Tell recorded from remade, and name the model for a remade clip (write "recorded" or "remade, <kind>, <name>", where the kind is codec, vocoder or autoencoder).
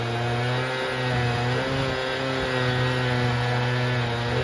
recorded